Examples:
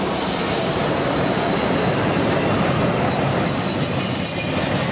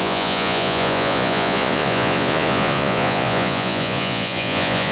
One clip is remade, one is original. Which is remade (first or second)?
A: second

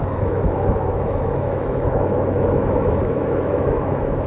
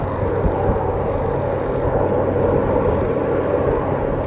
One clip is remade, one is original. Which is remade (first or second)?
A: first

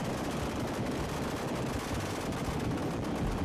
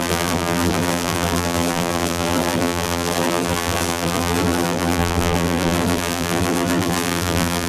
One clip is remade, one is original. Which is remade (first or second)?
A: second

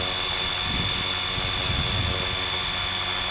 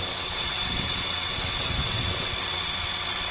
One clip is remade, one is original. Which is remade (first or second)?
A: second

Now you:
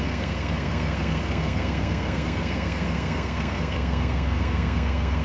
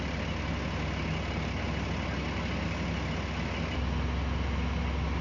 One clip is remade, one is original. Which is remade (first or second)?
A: first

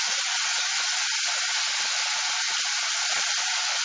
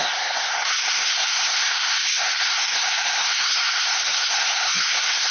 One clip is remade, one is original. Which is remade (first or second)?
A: second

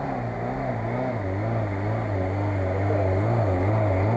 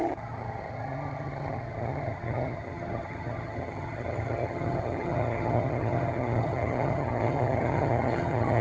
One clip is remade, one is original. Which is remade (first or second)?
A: second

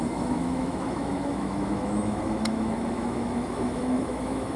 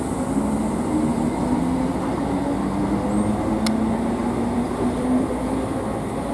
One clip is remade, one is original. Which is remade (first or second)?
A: first